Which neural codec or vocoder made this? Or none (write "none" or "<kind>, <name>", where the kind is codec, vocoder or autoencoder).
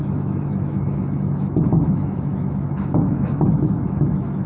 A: autoencoder, DAC-VAE